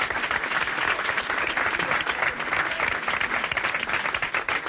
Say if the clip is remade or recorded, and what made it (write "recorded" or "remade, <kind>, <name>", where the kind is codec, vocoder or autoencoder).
recorded